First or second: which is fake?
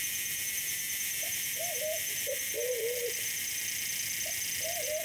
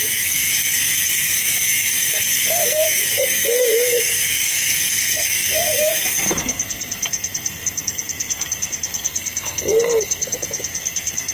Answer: second